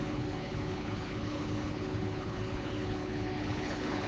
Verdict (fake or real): fake